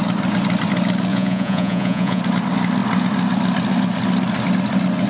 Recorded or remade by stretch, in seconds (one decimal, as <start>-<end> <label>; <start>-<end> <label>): 0.0-1.1 recorded; 1.1-2.2 remade; 2.2-5.1 recorded